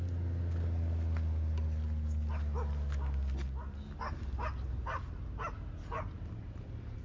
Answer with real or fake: real